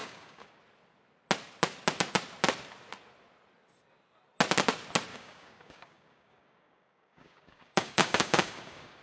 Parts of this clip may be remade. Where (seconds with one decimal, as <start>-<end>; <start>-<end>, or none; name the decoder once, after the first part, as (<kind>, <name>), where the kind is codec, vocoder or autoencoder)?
0.0-0.6 (codec, DAC); 5.1-9.0